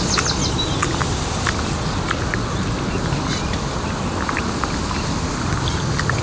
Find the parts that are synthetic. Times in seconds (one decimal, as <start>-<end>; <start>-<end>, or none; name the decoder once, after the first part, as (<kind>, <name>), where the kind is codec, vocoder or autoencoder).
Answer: none